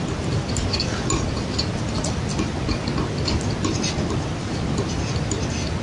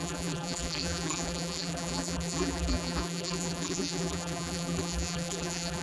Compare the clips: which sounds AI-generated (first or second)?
second